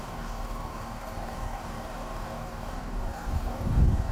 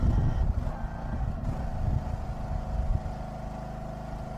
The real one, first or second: second